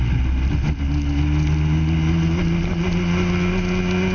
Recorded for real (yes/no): yes